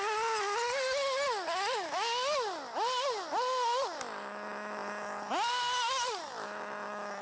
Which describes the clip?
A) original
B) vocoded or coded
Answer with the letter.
A